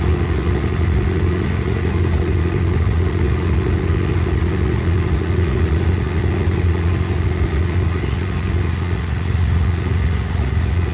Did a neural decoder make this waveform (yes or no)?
yes